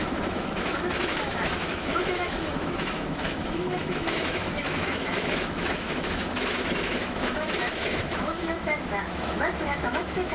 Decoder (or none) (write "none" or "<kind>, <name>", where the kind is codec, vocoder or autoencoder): autoencoder, DAC-VAE